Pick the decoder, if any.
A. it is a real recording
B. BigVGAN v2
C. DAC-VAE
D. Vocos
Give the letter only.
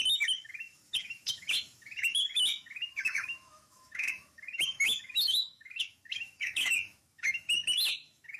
C